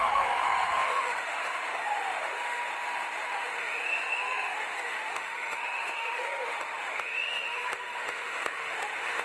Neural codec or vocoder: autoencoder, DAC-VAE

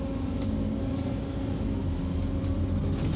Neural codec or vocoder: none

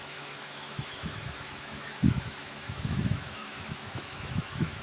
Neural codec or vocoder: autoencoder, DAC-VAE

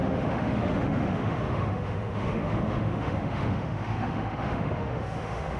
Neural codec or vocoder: autoencoder, DAC-VAE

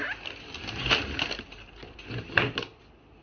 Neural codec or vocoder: none